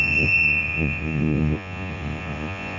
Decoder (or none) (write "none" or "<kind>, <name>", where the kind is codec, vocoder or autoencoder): vocoder, Vocos